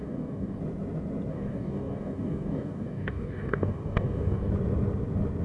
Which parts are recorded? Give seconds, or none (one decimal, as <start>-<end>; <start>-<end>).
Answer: 0.6-1.3; 4.5-5.4